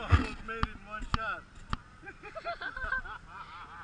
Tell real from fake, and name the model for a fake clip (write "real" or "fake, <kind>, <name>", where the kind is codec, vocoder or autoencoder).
real